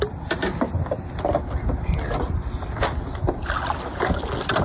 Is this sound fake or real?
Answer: real